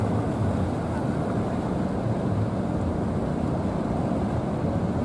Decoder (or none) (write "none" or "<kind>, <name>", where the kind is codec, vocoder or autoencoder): none